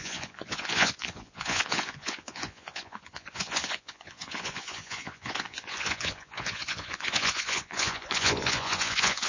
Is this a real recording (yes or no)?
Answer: no